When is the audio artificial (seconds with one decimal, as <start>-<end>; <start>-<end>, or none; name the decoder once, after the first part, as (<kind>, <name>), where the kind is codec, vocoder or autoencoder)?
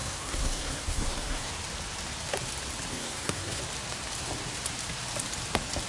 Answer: 0.0-1.5 (codec, SNAC); 2.9-3.6